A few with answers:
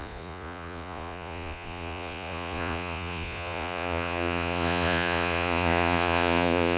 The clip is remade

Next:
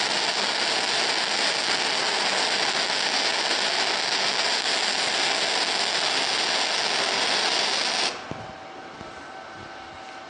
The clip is recorded